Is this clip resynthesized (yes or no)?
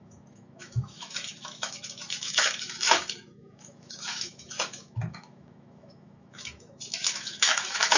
yes